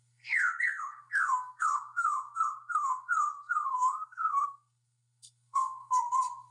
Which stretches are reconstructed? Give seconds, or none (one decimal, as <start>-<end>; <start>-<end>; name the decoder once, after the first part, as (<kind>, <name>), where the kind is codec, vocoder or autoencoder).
0.0-6.5 (codec, SNAC)